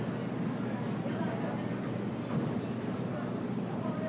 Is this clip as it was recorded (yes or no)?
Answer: yes